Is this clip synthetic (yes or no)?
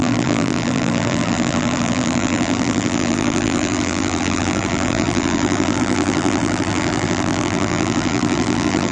yes